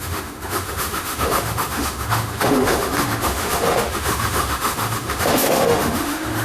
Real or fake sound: fake